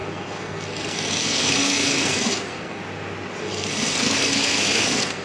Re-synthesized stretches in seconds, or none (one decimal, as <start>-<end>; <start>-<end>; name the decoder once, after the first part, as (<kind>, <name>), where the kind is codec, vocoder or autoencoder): 0.0-2.8 (codec, SNAC); 3.4-5.2